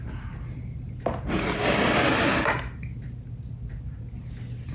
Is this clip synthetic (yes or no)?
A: no